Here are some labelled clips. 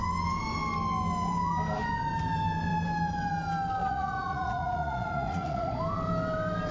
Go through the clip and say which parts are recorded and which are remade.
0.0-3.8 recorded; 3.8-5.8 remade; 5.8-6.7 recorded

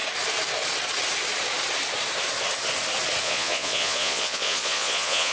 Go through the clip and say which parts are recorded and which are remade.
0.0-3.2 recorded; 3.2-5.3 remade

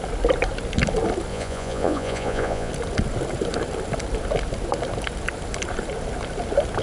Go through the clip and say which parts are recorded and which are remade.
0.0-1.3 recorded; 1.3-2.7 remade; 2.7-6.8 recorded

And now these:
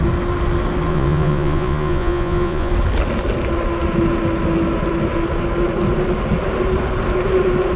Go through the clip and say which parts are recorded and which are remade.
0.0-0.9 recorded; 0.9-2.7 remade; 2.7-7.8 recorded